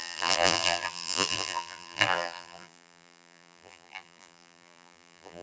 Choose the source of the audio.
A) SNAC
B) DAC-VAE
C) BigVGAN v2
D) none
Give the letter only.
C